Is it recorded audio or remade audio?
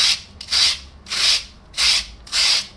recorded